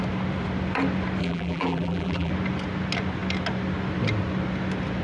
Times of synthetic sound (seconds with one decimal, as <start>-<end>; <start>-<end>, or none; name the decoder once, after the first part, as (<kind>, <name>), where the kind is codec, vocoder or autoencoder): 1.2-2.3 (vocoder, BigVGAN v2)

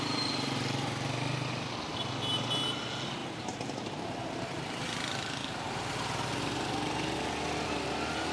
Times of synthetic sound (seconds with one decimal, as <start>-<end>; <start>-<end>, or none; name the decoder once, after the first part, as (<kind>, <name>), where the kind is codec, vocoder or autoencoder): 3.2-4.8 (vocoder, BigVGAN v2)

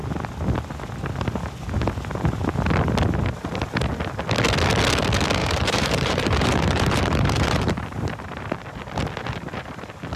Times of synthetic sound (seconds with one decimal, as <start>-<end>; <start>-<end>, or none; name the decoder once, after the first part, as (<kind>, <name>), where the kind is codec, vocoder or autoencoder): 5.4-8.6 (vocoder, BigVGAN v2)

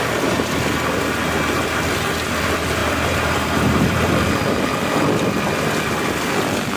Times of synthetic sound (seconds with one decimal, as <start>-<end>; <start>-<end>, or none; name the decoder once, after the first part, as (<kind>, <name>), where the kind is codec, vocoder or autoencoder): 2.8-4.1 (vocoder, BigVGAN v2)

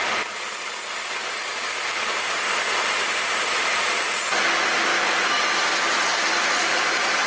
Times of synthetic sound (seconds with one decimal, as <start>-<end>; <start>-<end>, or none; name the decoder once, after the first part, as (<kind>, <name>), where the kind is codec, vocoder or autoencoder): 4.9-7.3 (vocoder, BigVGAN v2)